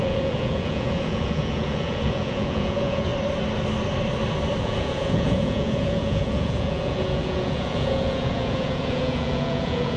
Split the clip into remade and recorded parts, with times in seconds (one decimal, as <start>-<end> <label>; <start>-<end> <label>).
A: 0.0-3.1 remade; 3.1-4.6 recorded; 4.6-10.0 remade